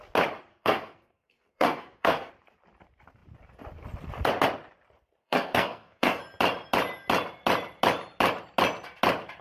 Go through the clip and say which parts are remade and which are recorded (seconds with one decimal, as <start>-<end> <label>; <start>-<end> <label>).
0.0-0.5 recorded; 0.5-2.3 remade; 2.3-5.2 recorded; 5.2-6.2 remade; 6.2-9.4 recorded